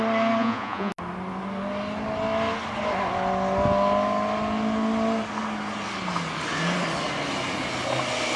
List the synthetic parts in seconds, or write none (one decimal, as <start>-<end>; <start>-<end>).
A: 0.4-0.9